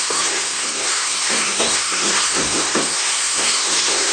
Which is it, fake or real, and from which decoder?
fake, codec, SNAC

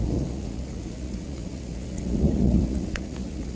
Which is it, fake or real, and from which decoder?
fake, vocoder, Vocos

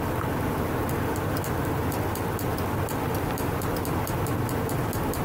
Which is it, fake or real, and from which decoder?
real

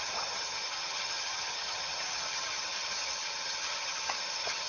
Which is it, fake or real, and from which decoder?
fake, vocoder, HiFi-GAN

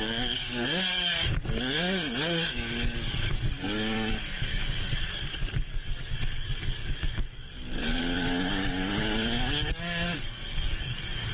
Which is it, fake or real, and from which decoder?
fake, codec, DAC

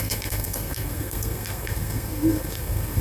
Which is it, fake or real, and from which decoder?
fake, codec, SNAC